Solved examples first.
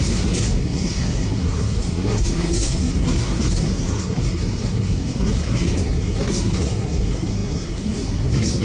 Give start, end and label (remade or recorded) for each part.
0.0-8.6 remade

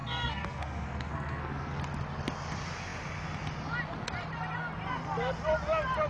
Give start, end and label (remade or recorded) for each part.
0.0-1.8 remade; 1.8-6.1 recorded

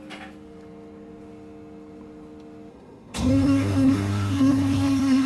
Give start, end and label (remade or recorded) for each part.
0.0-2.7 recorded; 2.7-5.3 remade

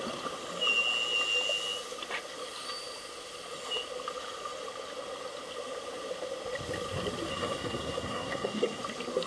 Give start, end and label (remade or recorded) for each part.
0.0-7.3 recorded; 7.3-8.8 remade; 8.8-9.3 recorded

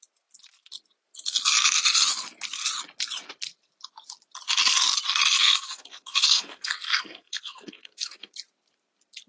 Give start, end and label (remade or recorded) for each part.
0.0-5.4 recorded; 5.4-8.3 remade; 8.3-9.3 recorded

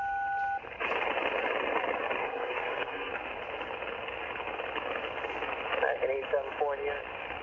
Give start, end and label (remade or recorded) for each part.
0.0-2.2 recorded; 2.2-3.1 remade; 3.1-7.4 recorded

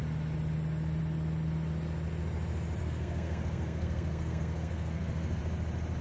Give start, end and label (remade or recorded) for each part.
0.0-2.8 recorded; 2.8-5.4 remade; 5.4-6.0 recorded

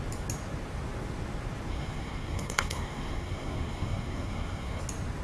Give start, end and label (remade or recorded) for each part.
0.0-1.7 recorded; 1.7-4.8 remade; 4.8-5.2 recorded